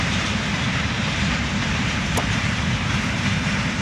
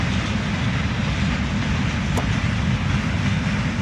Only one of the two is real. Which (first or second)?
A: second